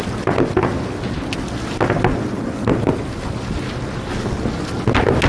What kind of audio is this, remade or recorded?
recorded